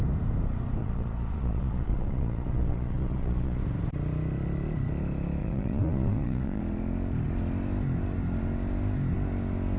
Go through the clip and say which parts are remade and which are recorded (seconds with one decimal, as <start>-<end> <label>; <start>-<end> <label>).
0.0-0.8 recorded; 0.8-3.6 remade; 3.6-5.4 recorded; 5.4-6.6 remade; 6.6-9.8 recorded